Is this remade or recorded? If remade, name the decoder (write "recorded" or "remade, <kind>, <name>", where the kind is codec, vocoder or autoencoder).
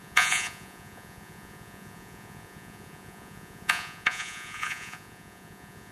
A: remade, vocoder, Vocos